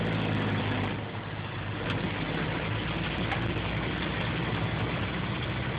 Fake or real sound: real